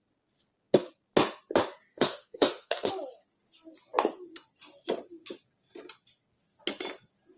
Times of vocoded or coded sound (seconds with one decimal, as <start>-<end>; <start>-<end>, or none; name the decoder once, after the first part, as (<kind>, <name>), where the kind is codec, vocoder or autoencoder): 1.9-2.9 (codec, SNAC)